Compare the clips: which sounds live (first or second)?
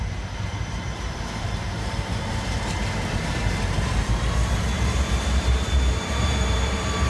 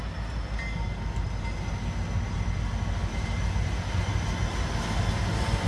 second